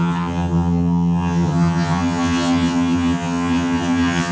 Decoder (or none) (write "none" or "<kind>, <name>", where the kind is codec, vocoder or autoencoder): vocoder, HiFi-GAN